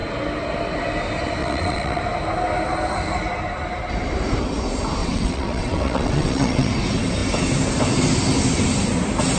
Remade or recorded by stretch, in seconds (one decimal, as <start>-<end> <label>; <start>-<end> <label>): 0.0-1.4 recorded; 1.4-2.0 remade; 2.0-5.0 recorded; 5.0-6.7 remade; 6.7-9.4 recorded